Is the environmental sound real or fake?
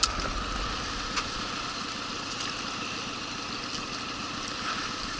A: real